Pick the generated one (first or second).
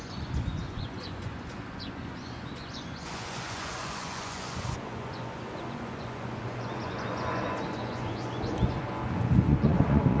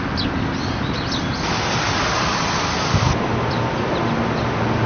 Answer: first